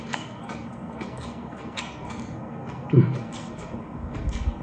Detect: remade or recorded remade